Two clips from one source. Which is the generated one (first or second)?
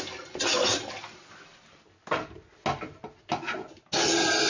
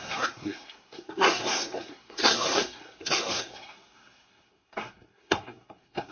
second